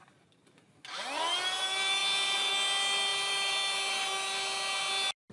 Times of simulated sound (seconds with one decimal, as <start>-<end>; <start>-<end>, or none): none